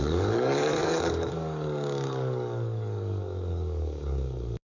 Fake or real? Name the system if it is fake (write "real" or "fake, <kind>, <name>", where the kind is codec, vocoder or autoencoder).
fake, codec, DAC